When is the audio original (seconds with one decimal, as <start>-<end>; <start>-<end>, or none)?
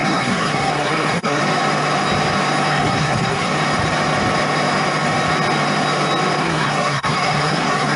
1.4-2.7; 3.5-6.4